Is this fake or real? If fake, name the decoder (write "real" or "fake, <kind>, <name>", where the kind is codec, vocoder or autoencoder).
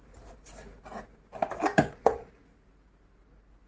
real